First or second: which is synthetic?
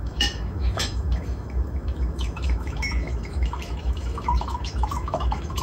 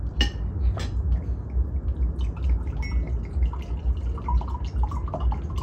first